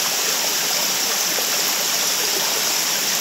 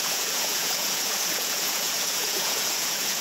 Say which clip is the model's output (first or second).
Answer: second